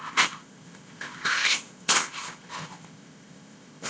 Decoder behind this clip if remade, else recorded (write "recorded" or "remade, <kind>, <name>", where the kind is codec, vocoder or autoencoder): remade, codec, ZipCodec